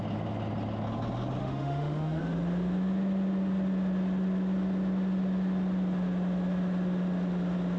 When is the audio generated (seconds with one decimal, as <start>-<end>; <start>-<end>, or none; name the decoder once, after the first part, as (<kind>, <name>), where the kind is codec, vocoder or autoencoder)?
1.4-2.2 (autoencoder, DAC-VAE)